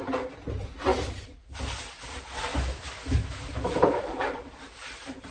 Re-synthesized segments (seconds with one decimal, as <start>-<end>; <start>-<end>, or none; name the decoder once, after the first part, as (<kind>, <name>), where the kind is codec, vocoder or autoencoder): 0.9-1.5 (autoencoder, DAC-VAE); 2.5-4.1

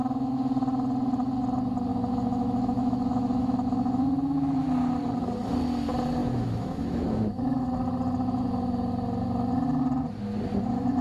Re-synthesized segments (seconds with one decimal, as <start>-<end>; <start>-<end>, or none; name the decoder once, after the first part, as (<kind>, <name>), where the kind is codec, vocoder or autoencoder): 1.9-4.5 (autoencoder, DAC-VAE); 6.2-7.7

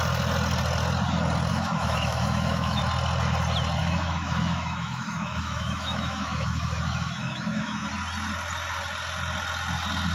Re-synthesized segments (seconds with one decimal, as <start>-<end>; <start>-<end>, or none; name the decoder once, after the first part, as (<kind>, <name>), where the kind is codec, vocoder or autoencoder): 1.5-2.8 (autoencoder, DAC-VAE); 3.8-7.9

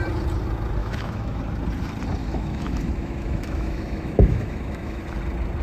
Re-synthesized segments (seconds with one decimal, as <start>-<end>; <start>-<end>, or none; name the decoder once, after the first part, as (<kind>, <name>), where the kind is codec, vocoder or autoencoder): 0.8-1.4 (autoencoder, DAC-VAE); 2.2-5.0

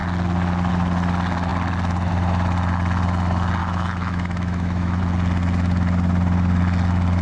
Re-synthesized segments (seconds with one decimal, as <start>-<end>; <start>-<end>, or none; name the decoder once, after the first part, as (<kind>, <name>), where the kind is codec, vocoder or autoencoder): 3.6-5.0 (autoencoder, DAC-VAE)

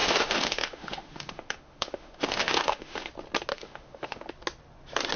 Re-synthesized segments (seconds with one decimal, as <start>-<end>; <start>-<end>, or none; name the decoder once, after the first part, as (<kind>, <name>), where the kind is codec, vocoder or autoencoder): 0.0-3.1 (autoencoder, DAC-VAE); 3.5-4.3

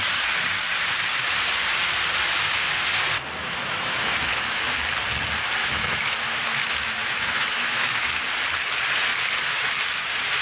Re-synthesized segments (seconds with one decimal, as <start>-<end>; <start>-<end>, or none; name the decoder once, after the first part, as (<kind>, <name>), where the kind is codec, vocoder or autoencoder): 3.4-4.6 (autoencoder, DAC-VAE); 5.6-8.2

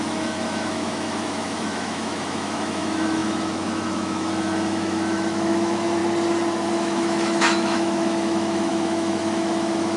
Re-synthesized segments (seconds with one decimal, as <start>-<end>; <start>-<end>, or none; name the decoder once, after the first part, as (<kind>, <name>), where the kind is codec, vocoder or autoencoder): 0.0-6.0 (autoencoder, DAC-VAE); 6.7-10.0